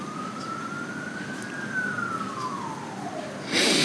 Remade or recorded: recorded